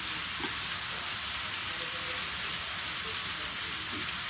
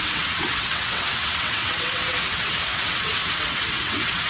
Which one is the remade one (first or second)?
second